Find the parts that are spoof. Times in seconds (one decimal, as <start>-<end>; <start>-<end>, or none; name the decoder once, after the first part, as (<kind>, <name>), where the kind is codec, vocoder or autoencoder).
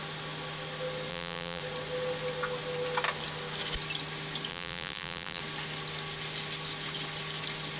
1.1-1.6 (vocoder, BigVGAN v2); 4.5-5.4